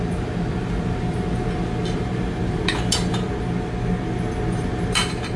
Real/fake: real